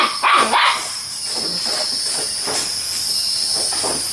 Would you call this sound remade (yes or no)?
no